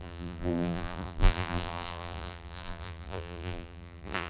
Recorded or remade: remade